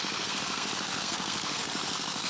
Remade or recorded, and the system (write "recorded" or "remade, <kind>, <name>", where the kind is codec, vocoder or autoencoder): remade, codec, SNAC